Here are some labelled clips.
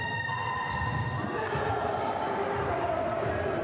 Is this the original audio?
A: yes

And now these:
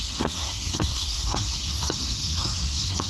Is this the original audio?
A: no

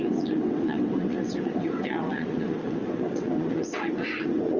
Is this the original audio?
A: no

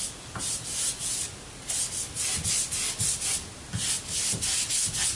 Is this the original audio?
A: yes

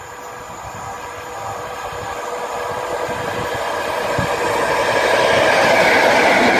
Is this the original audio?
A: yes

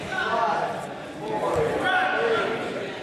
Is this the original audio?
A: no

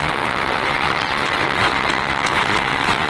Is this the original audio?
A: no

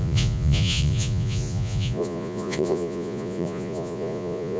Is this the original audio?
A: no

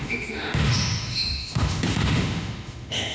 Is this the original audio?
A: no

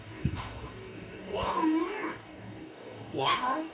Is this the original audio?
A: no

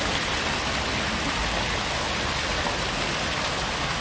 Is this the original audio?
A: yes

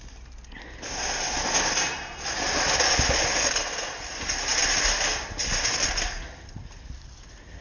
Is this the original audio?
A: yes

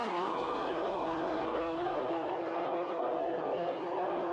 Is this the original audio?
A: no